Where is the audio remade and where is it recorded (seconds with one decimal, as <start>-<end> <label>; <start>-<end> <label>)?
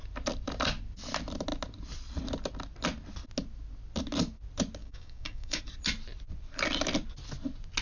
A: 0.0-4.8 recorded; 4.8-5.6 remade; 5.6-7.8 recorded